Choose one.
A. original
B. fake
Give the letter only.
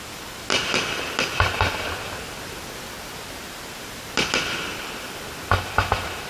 A